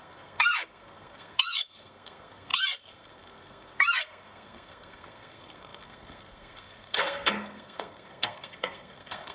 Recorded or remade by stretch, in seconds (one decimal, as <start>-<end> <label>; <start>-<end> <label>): 0.0-9.3 remade